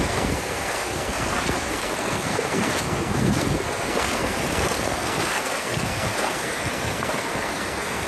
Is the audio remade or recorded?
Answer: remade